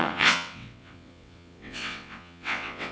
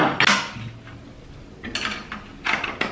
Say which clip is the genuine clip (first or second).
second